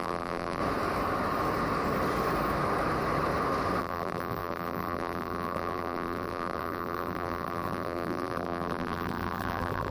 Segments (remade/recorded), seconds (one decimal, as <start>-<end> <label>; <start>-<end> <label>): 0.0-0.6 remade; 0.6-3.8 recorded; 3.8-9.9 remade